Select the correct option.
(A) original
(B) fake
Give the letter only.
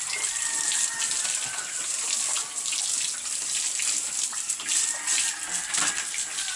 A